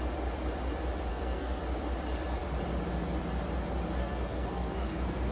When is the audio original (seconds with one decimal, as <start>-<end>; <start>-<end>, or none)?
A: 0.0-1.1; 1.6-4.0